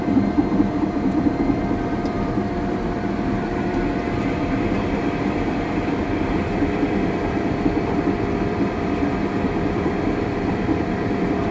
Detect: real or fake fake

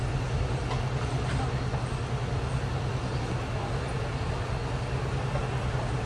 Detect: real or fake real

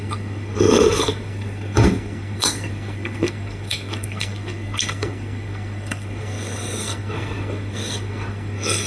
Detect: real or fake fake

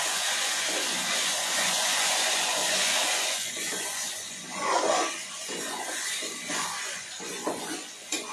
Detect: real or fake fake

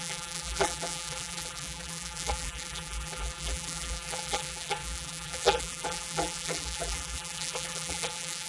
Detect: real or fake fake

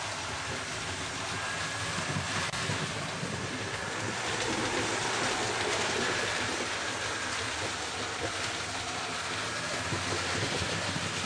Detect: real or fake real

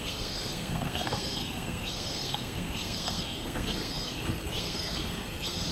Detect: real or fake fake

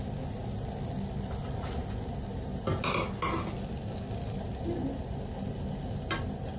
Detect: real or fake real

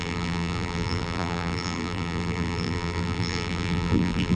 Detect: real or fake fake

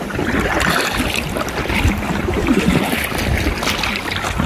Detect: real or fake real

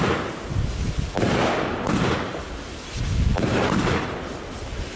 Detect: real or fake real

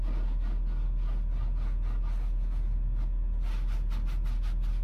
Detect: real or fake real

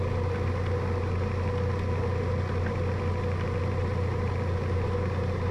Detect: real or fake real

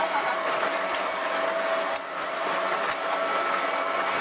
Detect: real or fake real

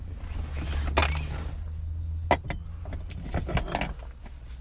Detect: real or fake real